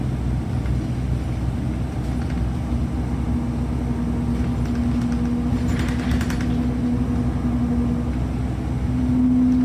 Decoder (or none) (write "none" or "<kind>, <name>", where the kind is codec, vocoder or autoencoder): none